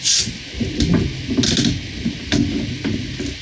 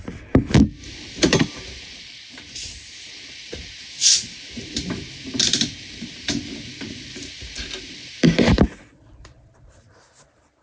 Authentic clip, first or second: first